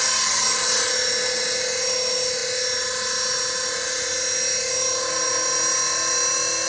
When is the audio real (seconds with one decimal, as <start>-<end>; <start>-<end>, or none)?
0.0-6.7

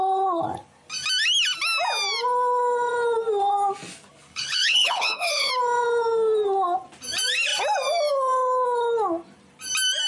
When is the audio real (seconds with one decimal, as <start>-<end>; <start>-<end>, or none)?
0.0-4.3; 5.5-10.1

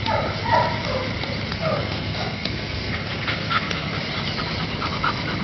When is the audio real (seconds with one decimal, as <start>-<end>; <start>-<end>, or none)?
0.0-1.5; 3.9-5.4

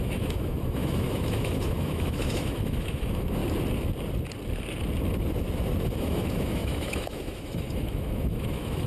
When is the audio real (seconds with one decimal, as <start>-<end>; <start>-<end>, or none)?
3.4-5.9

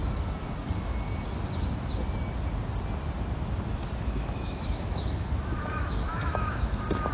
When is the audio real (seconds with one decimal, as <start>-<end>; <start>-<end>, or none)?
0.0-4.0

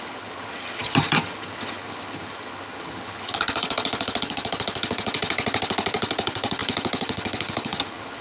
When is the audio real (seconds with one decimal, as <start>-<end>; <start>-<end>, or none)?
none

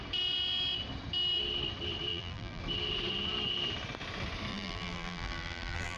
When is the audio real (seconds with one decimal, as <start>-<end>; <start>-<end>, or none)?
0.0-2.1; 2.6-4.5